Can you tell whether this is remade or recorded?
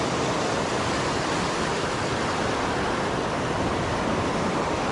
recorded